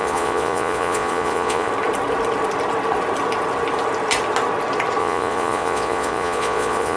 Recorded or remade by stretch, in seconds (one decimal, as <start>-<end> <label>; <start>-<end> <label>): 0.0-1.7 remade; 1.7-5.0 recorded; 5.0-7.0 remade

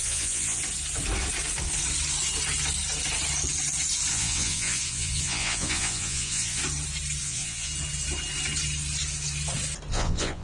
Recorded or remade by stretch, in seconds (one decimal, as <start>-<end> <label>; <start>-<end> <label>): 0.0-0.6 remade; 0.6-4.1 recorded; 4.1-6.6 remade; 6.6-7.2 recorded; 7.2-7.7 remade; 7.7-9.9 recorded; 9.9-10.4 remade

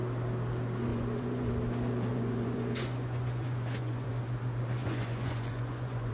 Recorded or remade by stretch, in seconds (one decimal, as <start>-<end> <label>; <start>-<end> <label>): 0.0-0.9 recorded; 0.9-1.5 remade; 1.5-2.1 recorded; 2.1-4.1 remade; 4.1-4.8 recorded; 4.8-6.1 remade